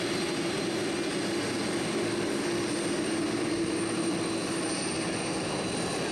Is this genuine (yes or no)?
yes